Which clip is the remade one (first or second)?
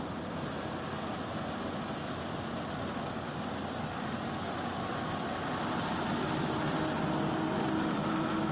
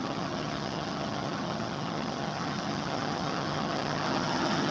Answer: second